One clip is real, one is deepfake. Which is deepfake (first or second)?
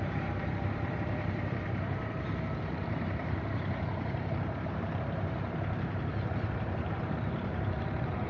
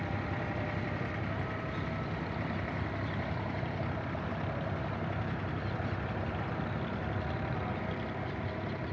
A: first